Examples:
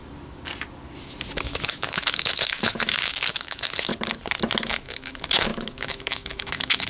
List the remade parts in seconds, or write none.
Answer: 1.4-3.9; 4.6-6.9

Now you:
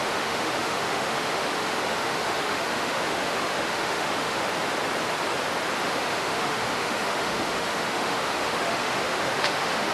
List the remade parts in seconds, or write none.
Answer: 0.0-4.4; 5.8-9.9

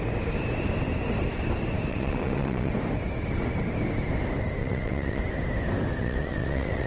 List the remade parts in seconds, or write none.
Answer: 1.9-2.7; 4.6-5.2; 6.0-6.9

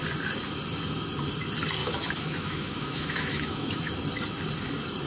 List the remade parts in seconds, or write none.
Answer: 1.8-3.9

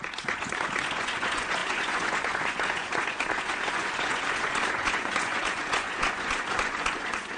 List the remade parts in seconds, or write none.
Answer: 0.0-7.4

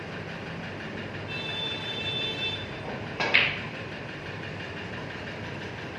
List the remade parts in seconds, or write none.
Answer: 1.5-4.9

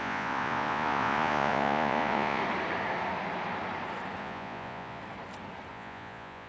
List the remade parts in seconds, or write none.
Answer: 0.0-2.4; 4.2-5.0; 5.7-6.5

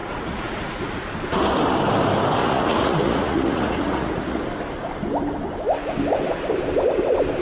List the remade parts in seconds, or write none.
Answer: 0.0-1.0; 2.4-4.4